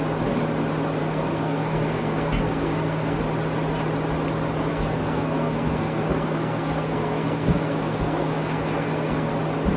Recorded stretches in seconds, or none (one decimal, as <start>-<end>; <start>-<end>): 0.0-1.0; 3.2-4.7; 9.3-9.8